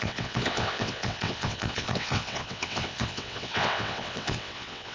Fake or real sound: fake